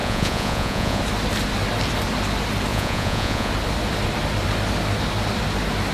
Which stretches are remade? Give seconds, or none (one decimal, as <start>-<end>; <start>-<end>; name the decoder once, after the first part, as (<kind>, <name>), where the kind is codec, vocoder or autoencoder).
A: 0.0-1.0 (vocoder, Vocos); 2.7-3.5